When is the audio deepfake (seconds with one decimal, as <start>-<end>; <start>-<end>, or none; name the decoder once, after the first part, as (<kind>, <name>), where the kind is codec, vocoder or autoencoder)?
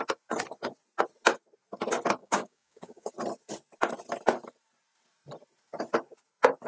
2.2-3.1 (codec, DAC)